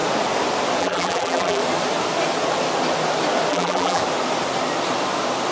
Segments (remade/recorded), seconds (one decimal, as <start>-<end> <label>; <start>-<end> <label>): 0.0-0.8 recorded; 0.8-1.6 remade; 1.6-3.5 recorded; 3.5-4.0 remade; 4.0-5.5 recorded